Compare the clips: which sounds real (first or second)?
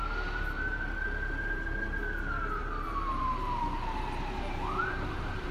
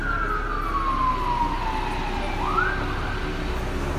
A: second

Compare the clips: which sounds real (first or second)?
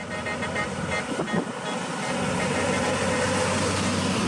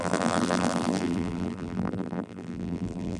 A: first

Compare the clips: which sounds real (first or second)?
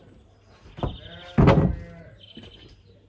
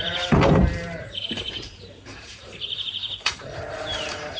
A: first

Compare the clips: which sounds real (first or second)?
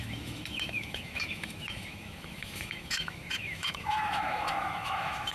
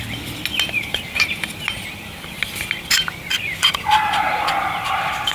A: second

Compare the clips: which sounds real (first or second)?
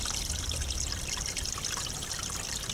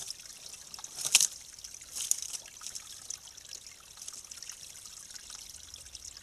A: second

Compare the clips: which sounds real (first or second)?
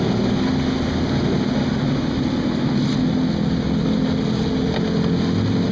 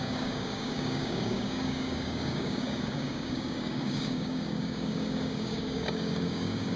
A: first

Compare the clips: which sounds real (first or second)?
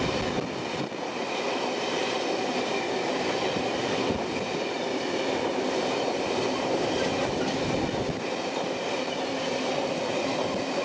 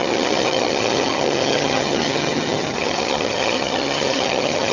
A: first